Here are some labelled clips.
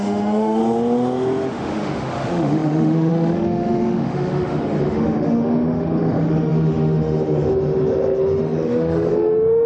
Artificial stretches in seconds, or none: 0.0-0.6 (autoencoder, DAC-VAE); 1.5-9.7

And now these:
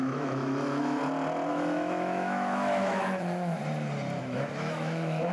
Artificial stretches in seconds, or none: 0.0-1.0 (autoencoder, DAC-VAE); 1.5-3.6; 4.2-5.3

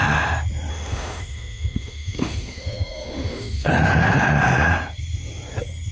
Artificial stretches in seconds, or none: 0.7-3.7 (autoencoder, DAC-VAE)

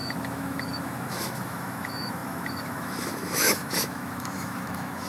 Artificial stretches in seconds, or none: 0.0-5.1 (autoencoder, DAC-VAE)

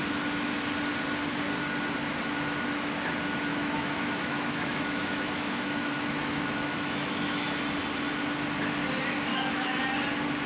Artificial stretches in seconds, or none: 3.5-7.6 (autoencoder, DAC-VAE); 9.3-9.8

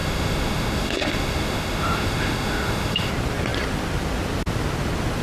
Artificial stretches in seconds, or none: 0.0-3.1 (autoencoder, DAC-VAE)